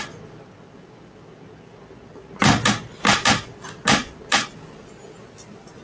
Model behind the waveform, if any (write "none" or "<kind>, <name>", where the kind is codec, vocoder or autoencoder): none